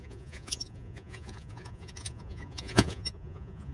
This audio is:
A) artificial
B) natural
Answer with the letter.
A